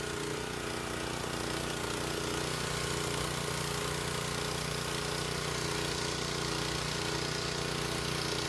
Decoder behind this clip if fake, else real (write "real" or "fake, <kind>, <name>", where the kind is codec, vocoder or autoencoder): real